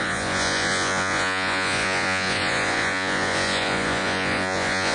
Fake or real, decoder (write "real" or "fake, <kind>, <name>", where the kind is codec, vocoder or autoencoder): fake, vocoder, Vocos